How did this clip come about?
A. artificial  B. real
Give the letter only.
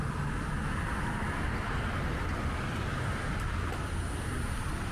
B